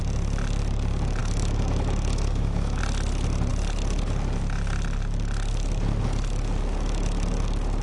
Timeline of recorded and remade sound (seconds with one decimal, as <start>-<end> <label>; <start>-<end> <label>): 0.0-1.2 recorded; 1.2-2.8 remade; 2.8-7.8 recorded